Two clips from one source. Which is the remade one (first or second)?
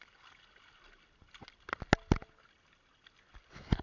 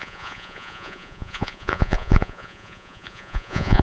second